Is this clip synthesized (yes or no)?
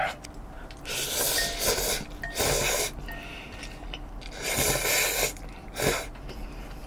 no